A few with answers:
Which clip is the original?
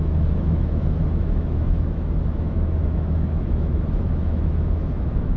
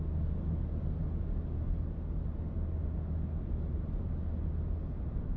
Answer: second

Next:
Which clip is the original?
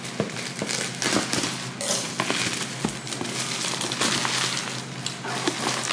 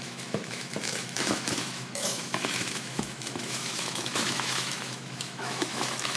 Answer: first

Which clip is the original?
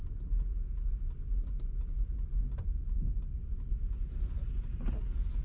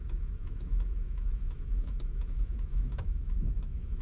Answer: first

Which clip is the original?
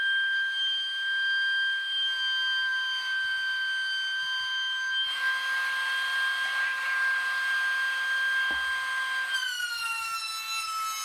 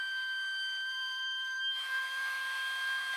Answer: first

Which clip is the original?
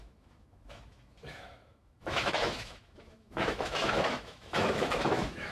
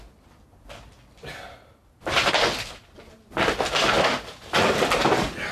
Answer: second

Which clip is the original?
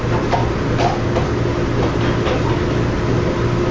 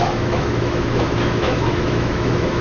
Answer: first